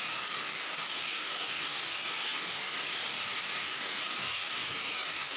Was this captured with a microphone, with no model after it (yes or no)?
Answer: no